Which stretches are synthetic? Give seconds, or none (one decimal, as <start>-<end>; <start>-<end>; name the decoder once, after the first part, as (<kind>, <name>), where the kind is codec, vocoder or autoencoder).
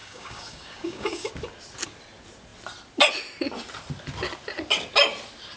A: 0.0-1.3 (codec, DAC)